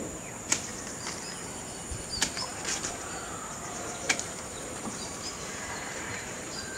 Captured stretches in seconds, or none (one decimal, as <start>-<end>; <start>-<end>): 0.7-1.6